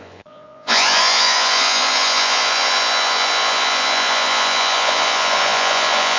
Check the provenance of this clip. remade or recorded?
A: remade